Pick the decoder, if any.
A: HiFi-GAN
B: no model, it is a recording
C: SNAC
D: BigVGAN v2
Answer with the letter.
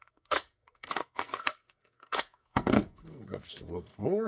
C